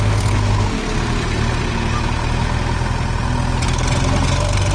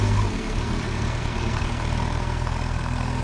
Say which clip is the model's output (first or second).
second